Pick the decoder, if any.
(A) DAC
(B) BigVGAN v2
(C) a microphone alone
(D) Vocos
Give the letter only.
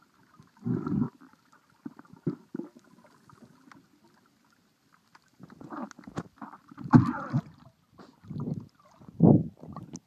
C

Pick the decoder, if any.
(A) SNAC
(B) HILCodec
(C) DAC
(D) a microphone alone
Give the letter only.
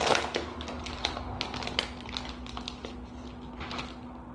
D